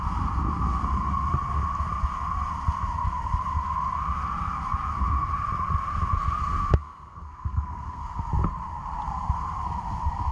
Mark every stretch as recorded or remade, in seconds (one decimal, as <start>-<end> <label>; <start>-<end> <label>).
0.0-6.6 recorded; 6.6-8.3 remade; 8.3-10.3 recorded